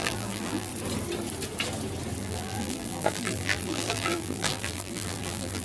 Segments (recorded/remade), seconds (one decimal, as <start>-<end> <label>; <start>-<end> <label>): 0.0-0.7 remade; 0.7-2.2 recorded; 2.2-5.6 remade